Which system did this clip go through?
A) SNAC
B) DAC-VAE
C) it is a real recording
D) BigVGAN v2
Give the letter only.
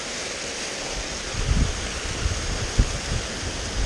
C